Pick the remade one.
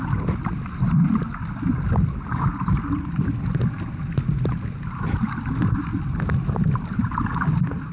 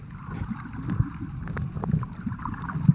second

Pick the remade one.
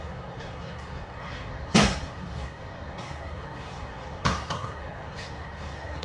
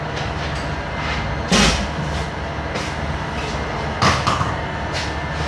first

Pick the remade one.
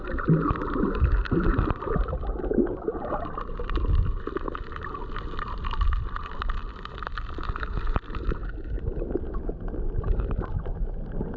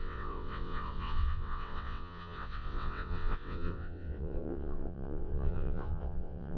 second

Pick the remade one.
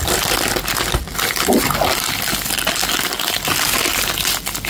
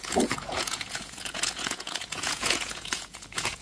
second